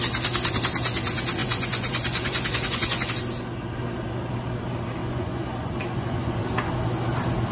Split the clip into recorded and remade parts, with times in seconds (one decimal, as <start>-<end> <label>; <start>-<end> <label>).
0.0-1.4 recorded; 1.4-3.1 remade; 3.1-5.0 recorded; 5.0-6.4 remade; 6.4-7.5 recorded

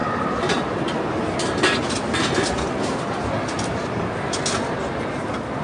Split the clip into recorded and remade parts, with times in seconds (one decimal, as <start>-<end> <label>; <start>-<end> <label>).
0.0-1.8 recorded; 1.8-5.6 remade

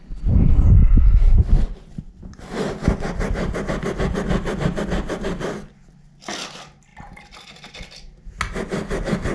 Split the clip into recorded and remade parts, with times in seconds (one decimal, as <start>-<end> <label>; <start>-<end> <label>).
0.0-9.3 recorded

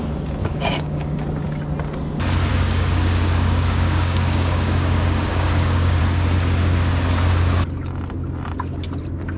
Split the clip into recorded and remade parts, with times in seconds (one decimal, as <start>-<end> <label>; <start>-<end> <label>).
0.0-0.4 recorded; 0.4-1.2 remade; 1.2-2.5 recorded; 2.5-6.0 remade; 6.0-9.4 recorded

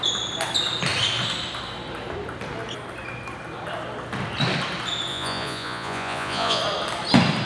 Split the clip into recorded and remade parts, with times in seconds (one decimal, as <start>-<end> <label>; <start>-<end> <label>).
0.0-5.1 recorded; 5.1-6.6 remade; 6.6-7.5 recorded